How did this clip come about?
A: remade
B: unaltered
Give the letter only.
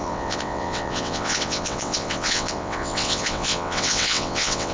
A